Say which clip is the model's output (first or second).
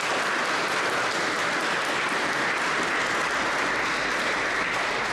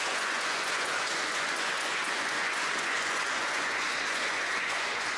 second